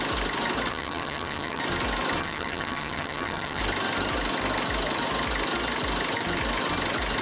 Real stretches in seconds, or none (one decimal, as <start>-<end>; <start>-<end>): 0.0-0.7; 1.6-2.2; 3.6-7.2